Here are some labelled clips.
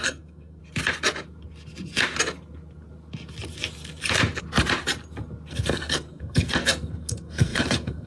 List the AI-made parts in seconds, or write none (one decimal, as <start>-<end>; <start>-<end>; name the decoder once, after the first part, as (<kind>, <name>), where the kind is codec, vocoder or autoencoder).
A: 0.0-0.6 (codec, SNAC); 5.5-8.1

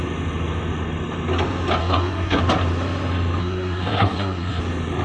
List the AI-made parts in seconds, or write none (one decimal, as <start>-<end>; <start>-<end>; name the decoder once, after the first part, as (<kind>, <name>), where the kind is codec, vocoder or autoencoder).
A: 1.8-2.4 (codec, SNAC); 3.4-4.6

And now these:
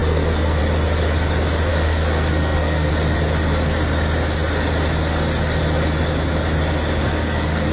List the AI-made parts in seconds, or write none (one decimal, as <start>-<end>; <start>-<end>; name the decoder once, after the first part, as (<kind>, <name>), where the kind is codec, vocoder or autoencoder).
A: 0.0-0.6 (codec, SNAC); 1.7-2.9; 7.0-7.7

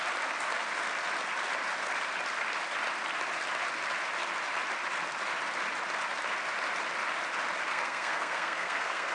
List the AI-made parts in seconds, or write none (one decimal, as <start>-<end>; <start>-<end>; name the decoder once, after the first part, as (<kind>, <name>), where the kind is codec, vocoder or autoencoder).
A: 7.7-9.1 (codec, SNAC)

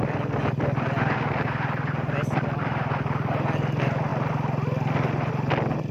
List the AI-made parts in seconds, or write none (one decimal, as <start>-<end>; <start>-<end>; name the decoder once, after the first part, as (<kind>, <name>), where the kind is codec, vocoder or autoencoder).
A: none

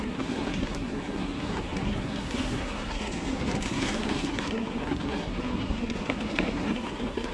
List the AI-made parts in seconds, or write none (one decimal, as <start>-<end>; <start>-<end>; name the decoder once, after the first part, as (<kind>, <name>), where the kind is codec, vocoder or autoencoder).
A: 0.0-7.3 (codec, SNAC)